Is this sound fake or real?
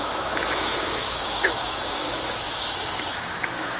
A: fake